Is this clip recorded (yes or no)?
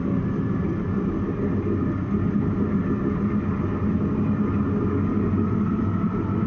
yes